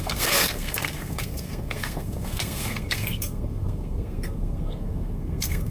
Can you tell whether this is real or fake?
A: fake